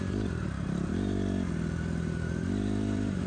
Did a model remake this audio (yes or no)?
yes